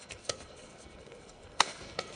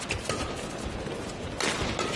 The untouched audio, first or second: second